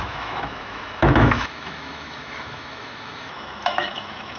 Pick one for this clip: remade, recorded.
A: remade